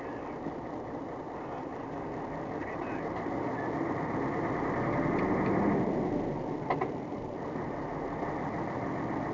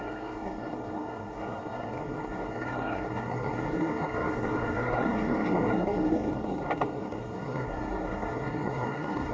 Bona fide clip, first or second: first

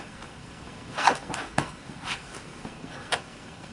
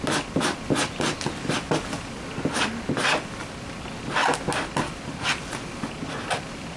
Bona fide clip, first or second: second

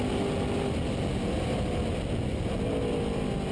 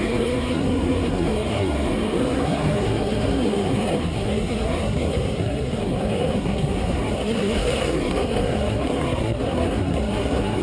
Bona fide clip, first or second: first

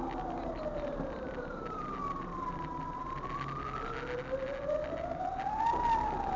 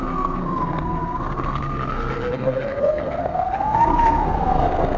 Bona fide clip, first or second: first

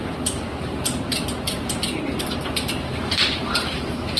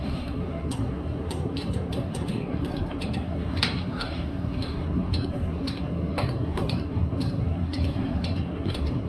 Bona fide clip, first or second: first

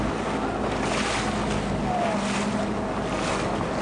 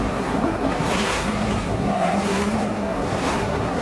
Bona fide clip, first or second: first